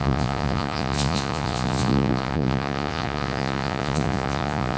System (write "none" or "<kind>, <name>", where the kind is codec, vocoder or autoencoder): vocoder, Vocos